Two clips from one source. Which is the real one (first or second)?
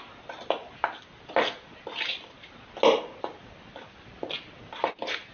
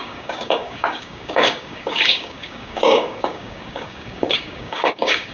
first